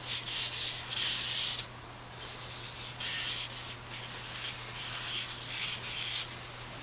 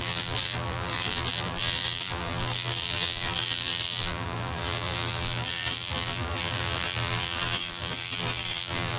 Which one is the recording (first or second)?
first